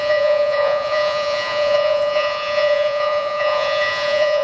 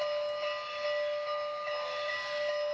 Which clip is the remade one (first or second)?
first